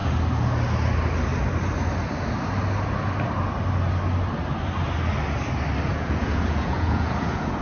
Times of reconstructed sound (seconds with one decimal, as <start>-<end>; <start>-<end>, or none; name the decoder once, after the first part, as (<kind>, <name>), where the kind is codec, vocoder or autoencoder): 5.9-7.6 (vocoder, Vocos)